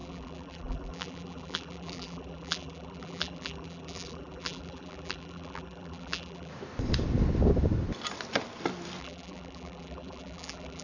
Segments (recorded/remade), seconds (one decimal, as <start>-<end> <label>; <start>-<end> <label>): 0.0-6.5 remade; 6.5-9.0 recorded; 9.0-10.8 remade